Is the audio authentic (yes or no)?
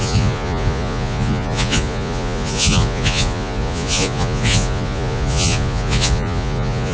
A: no